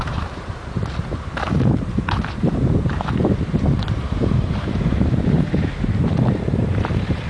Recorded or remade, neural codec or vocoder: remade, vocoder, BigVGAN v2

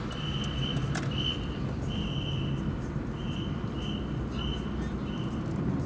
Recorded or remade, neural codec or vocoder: recorded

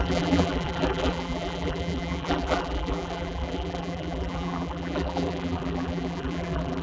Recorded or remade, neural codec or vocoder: remade, vocoder, BigVGAN v2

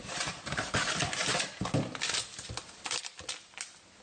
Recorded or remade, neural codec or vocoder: recorded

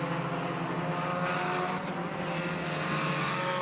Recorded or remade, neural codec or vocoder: recorded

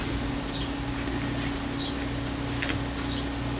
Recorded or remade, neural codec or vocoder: recorded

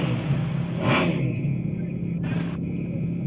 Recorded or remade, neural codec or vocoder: recorded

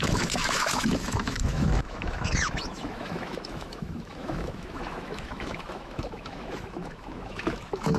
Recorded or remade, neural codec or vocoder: remade, autoencoder, DAC-VAE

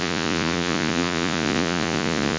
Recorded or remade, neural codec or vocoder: remade, vocoder, Vocos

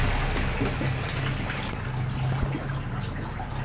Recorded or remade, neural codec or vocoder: recorded